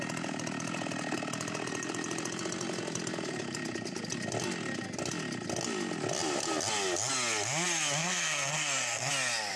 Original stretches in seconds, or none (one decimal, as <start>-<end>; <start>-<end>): 0.0-8.0; 9.1-9.6